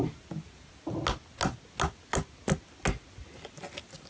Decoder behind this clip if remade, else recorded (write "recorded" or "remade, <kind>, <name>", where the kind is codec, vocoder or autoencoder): recorded